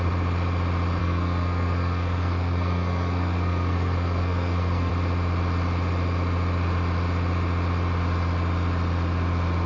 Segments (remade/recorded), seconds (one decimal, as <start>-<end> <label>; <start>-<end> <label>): 0.0-1.0 recorded; 1.0-4.9 remade; 4.9-9.7 recorded